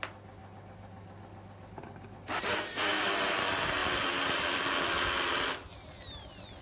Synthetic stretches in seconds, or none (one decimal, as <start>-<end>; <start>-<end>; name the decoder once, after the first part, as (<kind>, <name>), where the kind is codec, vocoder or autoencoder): none